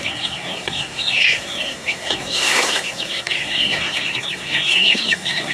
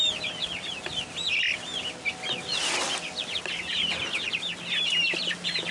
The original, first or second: second